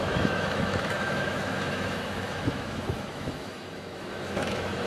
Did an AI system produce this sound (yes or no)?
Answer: yes